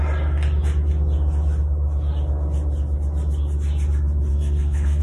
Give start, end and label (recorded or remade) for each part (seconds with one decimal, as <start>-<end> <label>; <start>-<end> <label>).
0.0-4.3 recorded; 4.3-5.0 remade